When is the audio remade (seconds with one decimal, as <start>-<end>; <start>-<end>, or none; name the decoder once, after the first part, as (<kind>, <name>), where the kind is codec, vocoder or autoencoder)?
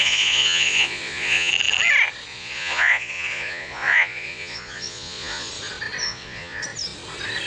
0.0-1.5 (vocoder, Vocos); 2.3-5.5; 6.0-6.6